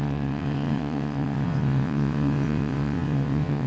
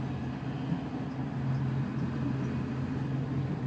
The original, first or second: second